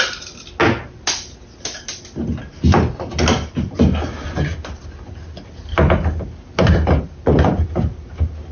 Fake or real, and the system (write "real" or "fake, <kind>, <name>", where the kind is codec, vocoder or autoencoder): real